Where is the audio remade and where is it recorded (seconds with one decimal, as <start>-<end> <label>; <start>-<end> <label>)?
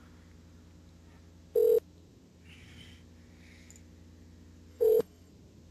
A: 0.0-4.7 recorded; 4.7-5.3 remade; 5.3-5.7 recorded